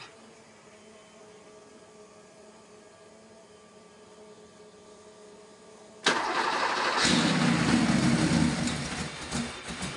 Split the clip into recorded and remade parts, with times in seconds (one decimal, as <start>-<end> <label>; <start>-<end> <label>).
0.0-10.0 recorded